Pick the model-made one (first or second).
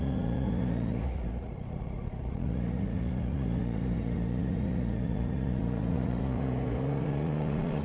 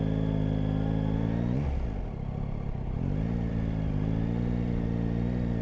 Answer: first